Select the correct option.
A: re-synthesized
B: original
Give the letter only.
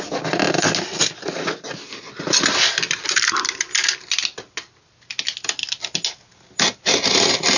B